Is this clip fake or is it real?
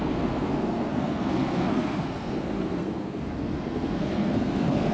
fake